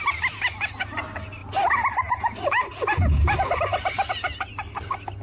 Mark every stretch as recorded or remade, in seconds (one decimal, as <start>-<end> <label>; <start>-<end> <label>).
0.0-5.2 recorded